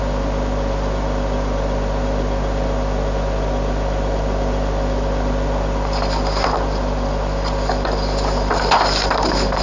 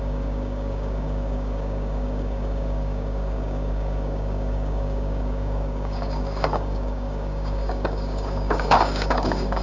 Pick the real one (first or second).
first